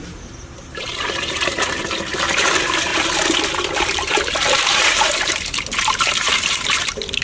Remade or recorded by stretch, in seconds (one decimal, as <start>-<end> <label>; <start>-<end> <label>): 0.0-2.9 remade; 2.9-3.5 recorded; 3.5-7.2 remade